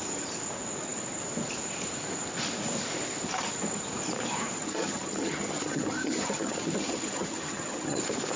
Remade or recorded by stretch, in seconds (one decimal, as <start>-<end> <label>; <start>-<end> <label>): 0.0-4.6 recorded; 4.6-8.0 remade; 8.0-8.4 recorded